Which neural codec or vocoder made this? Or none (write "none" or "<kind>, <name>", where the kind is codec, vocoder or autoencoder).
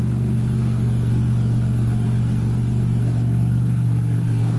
codec, SNAC